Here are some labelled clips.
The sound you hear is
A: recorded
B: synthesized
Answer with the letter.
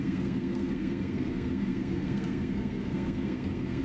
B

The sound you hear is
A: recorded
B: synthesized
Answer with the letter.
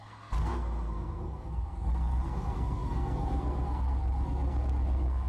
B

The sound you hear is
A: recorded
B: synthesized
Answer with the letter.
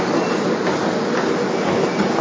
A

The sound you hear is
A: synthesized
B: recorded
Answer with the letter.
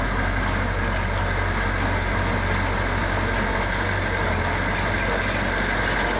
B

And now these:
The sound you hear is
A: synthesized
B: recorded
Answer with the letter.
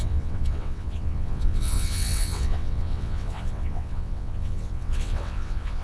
A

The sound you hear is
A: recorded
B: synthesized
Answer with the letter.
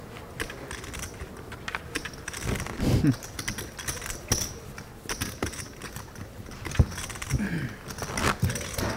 A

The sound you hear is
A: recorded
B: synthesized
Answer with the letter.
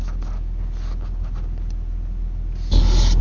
A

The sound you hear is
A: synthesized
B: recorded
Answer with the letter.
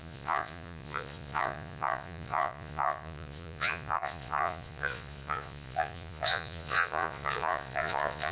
A